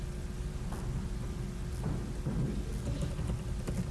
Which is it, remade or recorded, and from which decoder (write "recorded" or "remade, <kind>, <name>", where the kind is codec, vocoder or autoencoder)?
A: recorded